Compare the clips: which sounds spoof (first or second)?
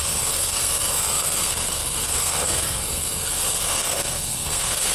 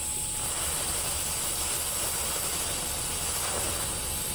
first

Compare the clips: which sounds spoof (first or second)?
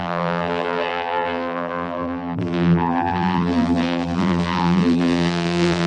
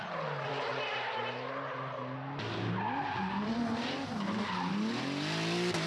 first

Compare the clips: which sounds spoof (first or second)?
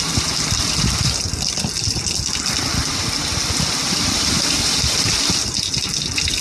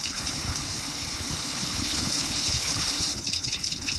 second